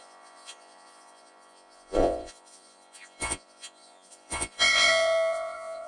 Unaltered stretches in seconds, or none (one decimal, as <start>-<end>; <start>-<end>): none